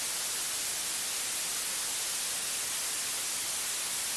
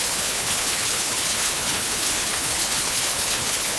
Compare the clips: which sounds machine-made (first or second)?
second